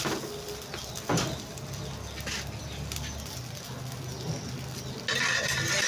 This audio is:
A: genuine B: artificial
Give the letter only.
A